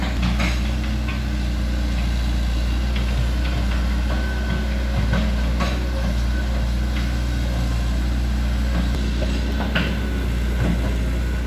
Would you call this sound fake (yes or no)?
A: no